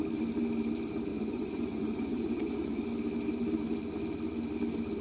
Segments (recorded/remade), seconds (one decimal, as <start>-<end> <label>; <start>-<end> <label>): 0.0-1.1 recorded; 1.1-2.8 remade; 2.8-5.0 recorded